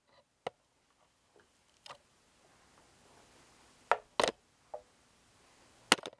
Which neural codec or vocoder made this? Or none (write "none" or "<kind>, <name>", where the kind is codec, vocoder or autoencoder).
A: none